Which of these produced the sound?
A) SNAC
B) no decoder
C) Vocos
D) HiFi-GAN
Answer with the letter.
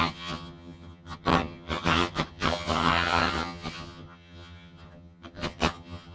D